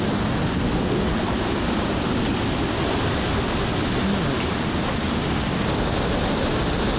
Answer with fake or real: real